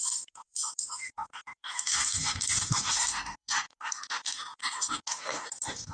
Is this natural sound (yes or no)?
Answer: no